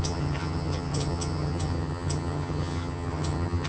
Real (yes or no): no